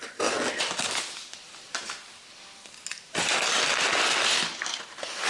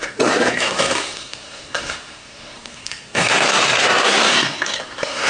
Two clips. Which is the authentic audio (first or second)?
first